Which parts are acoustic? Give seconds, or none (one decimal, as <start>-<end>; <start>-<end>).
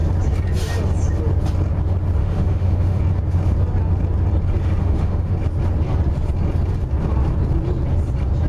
0.0-2.2; 3.0-4.8; 5.3-8.5